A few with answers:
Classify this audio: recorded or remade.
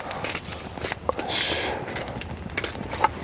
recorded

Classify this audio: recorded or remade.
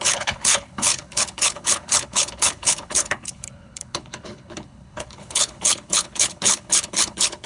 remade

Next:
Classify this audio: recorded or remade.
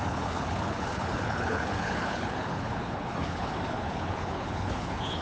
remade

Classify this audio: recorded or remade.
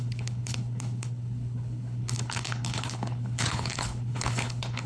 remade